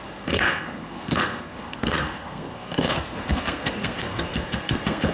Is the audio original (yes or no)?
no